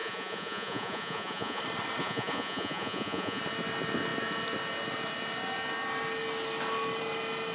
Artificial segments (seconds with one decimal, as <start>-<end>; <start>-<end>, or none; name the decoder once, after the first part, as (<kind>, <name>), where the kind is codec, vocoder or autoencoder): 0.0-1.6 (vocoder, Vocos); 2.0-3.4